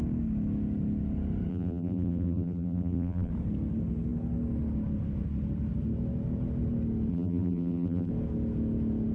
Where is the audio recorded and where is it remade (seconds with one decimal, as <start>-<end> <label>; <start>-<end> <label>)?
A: 0.0-1.5 recorded; 1.5-3.3 remade; 3.3-7.1 recorded; 7.1-8.1 remade; 8.1-9.1 recorded